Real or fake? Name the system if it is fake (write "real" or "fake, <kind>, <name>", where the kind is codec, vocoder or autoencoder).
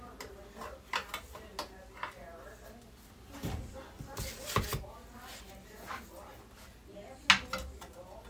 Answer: real